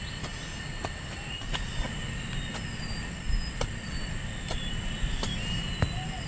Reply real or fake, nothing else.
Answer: real